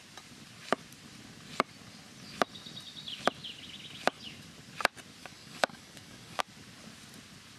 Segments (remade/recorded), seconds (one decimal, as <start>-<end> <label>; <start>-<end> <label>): 0.0-5.2 recorded; 5.2-6.4 remade; 6.4-7.6 recorded